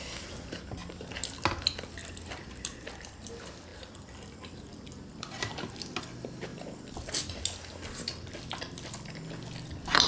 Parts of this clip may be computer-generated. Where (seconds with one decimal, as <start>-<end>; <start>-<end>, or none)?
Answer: 0.8-1.3; 2.0-3.3; 3.7-6.0